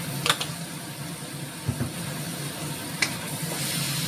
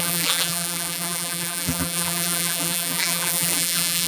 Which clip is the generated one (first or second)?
second